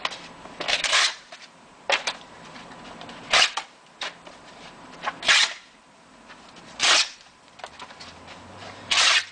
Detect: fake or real fake